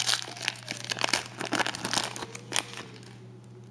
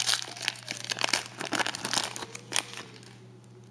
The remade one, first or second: second